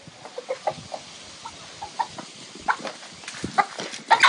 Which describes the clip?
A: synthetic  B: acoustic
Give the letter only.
B